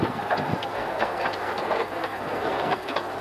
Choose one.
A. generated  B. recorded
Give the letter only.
A